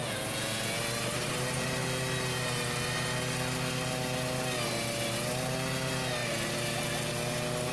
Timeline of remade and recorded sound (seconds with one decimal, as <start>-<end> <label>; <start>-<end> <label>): 0.0-0.8 remade; 0.8-7.7 recorded